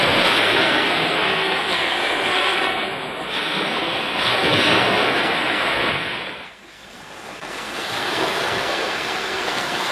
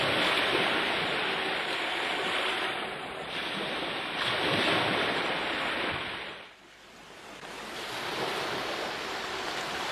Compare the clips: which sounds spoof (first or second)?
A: first